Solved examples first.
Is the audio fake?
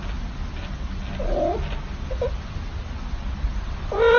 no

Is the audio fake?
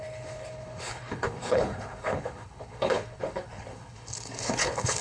yes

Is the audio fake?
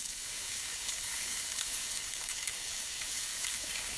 yes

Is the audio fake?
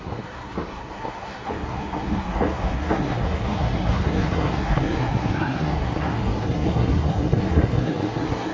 yes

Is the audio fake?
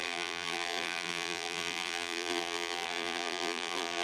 yes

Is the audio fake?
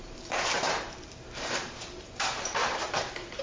yes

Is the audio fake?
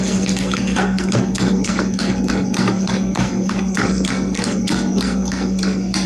yes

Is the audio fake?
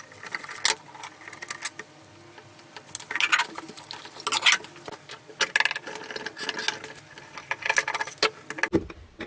no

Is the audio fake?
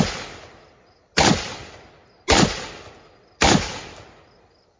no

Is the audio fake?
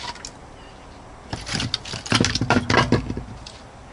no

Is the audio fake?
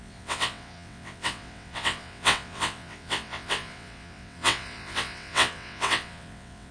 yes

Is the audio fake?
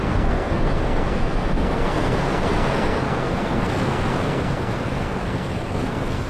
yes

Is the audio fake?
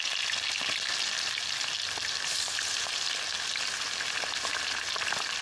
no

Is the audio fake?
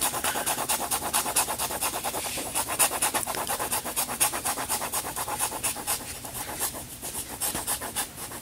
yes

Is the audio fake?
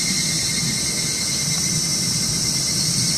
no